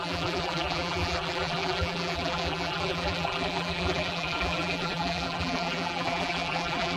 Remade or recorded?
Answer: remade